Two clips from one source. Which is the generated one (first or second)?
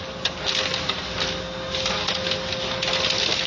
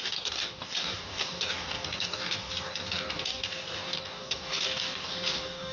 second